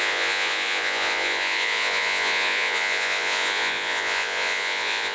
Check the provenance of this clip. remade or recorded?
remade